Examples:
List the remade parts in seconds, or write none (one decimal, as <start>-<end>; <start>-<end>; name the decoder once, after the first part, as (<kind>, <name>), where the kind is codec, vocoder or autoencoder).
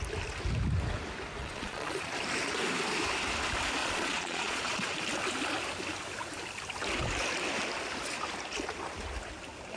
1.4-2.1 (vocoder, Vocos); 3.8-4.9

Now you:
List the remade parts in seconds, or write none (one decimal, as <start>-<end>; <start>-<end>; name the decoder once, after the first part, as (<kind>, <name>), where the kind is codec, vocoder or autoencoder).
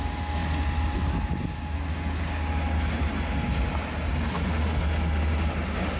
none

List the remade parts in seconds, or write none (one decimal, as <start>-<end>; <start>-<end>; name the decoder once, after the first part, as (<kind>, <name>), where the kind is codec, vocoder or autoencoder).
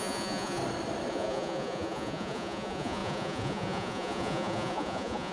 0.0-0.6 (vocoder, Vocos); 1.1-5.3